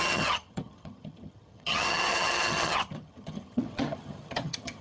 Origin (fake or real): fake